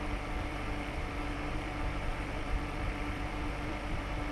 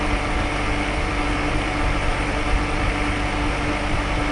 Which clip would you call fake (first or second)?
first